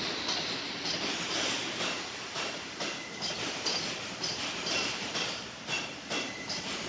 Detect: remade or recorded recorded